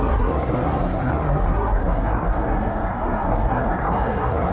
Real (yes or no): no